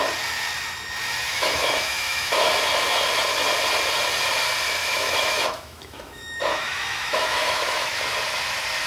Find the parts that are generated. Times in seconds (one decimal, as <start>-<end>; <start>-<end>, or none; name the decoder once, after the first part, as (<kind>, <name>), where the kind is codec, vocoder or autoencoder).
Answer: 1.3-2.5 (autoencoder, DAC-VAE); 4.8-8.0